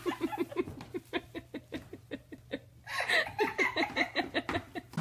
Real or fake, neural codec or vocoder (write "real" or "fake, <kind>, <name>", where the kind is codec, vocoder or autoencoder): real